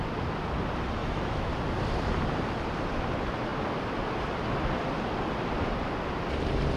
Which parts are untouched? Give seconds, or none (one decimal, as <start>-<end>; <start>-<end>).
0.0-1.0; 1.5-6.8